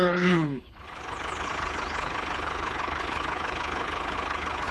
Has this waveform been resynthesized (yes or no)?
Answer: yes